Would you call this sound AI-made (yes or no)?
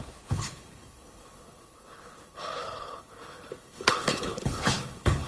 yes